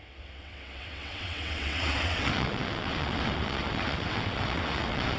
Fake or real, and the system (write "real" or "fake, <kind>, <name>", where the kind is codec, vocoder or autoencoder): fake, vocoder, WaveNeXt